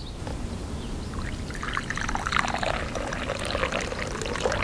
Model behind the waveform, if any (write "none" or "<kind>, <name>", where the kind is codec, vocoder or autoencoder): none